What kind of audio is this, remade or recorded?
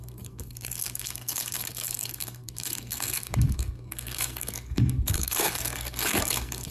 remade